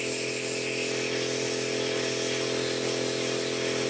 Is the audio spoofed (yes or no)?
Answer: no